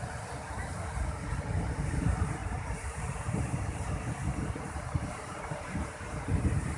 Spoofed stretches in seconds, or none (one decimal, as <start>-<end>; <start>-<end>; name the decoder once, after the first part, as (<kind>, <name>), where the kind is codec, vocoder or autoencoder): 2.4-6.8 (vocoder, BigVGAN v2)